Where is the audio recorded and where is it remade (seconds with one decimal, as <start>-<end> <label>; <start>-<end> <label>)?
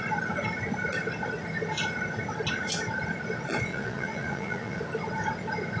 0.0-3.7 recorded; 3.7-4.8 remade; 4.8-5.8 recorded